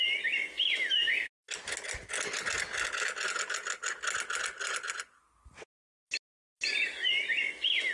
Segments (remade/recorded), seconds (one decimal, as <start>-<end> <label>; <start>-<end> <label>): 0.0-7.9 recorded